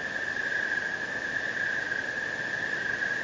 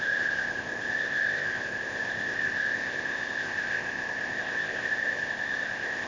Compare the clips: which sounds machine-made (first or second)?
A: second